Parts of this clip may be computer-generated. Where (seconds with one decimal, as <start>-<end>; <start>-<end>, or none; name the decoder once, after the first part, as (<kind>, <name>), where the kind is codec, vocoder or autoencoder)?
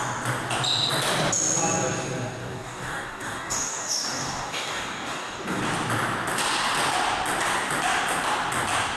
2.4-5.6 (codec, DAC)